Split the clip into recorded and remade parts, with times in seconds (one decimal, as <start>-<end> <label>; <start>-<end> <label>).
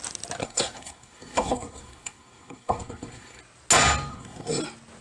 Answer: 0.0-0.4 recorded; 0.4-3.4 remade; 3.4-4.1 recorded; 4.1-4.6 remade; 4.6-5.0 recorded